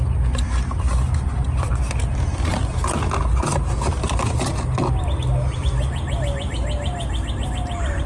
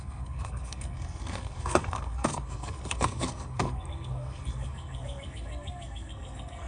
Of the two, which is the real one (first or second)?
first